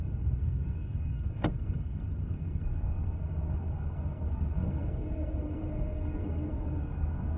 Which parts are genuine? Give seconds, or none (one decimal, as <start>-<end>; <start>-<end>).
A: none